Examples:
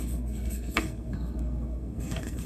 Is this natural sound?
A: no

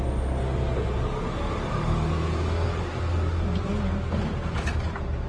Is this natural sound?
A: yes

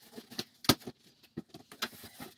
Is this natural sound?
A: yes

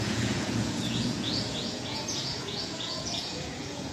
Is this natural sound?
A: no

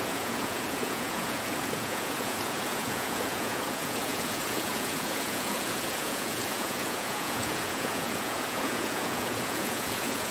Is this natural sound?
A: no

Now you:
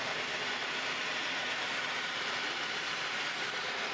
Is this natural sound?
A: no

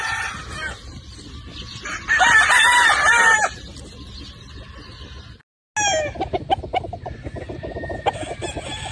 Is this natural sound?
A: yes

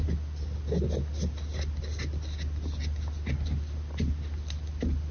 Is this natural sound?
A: yes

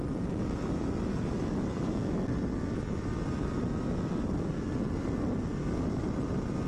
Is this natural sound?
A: yes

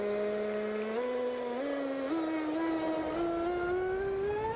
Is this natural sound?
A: yes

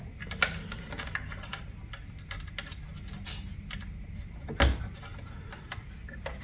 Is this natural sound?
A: yes